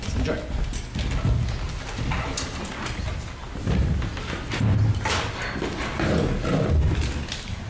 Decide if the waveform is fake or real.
real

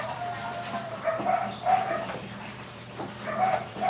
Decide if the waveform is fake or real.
fake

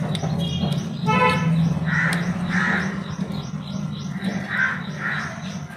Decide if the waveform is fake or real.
real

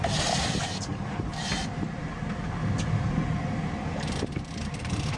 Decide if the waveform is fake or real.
fake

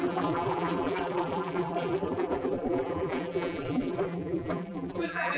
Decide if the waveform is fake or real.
fake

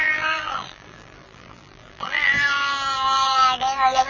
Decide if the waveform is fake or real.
fake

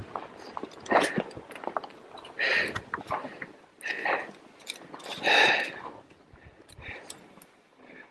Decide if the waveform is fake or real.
real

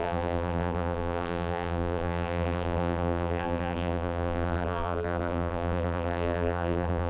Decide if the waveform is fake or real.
fake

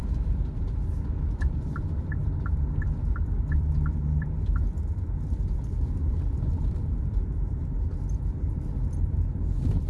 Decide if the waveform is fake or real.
fake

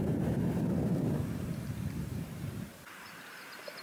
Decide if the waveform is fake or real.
fake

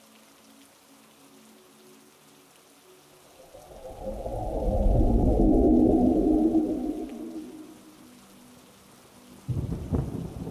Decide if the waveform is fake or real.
real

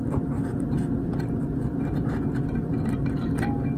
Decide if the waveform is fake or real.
real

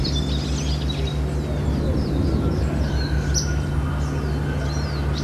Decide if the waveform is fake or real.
real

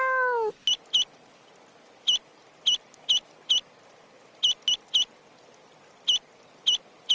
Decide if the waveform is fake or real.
real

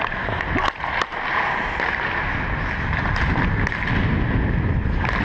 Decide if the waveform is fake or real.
real